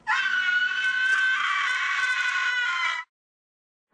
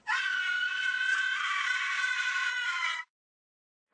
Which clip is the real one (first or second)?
first